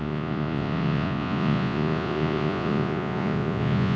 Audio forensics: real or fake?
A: fake